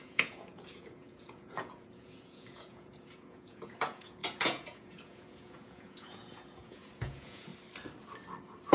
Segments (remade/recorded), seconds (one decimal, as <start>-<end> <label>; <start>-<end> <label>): 0.0-7.5 remade; 7.5-8.7 recorded

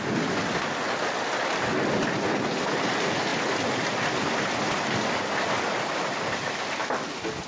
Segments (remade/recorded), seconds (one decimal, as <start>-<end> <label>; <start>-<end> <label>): 0.0-7.5 recorded

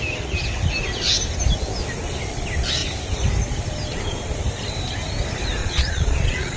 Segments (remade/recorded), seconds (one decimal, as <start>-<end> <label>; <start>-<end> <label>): 0.0-5.6 recorded; 5.6-6.6 remade

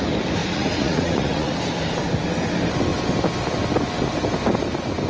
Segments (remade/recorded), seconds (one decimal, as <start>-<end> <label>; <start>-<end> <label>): 0.0-0.4 recorded; 0.4-1.6 remade; 1.6-5.1 recorded

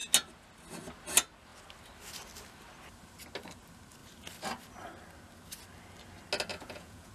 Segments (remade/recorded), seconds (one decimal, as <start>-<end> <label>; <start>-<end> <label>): 0.0-6.5 recorded; 6.5-7.1 remade